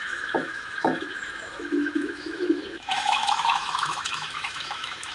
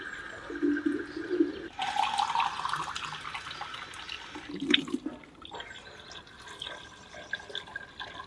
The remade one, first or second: first